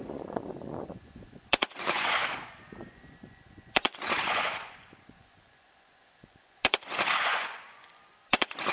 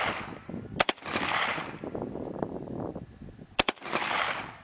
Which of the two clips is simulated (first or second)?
first